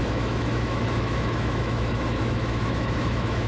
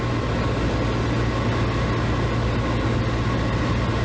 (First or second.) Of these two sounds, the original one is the second